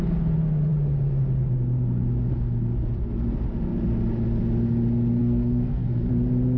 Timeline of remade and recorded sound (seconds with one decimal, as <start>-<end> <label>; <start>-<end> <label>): 0.0-5.2 recorded; 5.2-6.1 remade; 6.1-6.6 recorded